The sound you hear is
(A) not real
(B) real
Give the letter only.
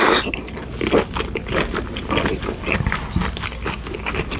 B